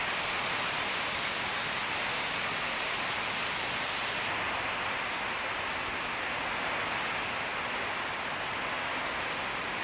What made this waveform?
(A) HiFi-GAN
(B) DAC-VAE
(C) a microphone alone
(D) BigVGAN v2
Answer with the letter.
D